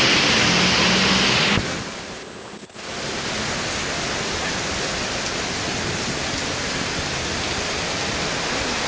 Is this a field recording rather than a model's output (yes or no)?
yes